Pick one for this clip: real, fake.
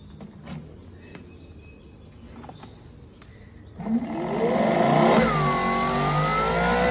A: real